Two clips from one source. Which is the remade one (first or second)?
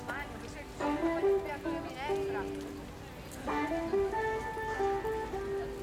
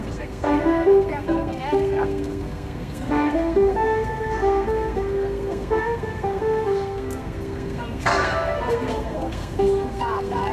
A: second